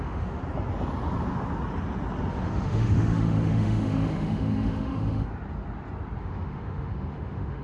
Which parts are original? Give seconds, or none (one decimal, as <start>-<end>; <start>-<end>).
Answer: 0.4-2.3; 5.3-6.2